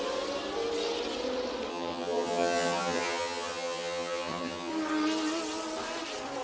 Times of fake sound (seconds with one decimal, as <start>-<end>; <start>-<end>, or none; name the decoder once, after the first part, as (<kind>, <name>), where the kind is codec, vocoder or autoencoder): 1.7-4.7 (vocoder, HiFi-GAN)